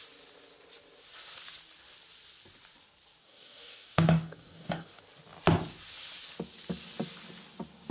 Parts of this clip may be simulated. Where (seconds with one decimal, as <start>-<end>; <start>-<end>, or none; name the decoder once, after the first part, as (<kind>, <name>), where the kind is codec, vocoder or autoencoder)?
3.2-5.0 (codec, DAC)

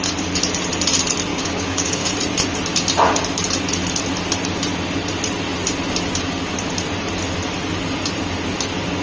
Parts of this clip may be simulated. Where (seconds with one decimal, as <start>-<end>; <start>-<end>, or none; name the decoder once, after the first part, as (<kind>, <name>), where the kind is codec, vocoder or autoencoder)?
1.3-2.1 (codec, DAC)